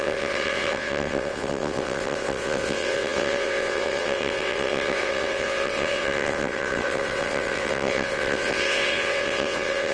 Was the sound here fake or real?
fake